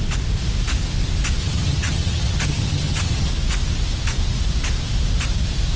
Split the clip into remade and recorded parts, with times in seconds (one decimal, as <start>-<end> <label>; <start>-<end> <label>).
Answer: 0.0-1.4 recorded; 1.4-3.3 remade; 3.3-5.8 recorded